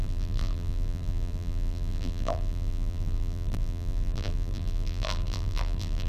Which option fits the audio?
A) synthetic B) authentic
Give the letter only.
A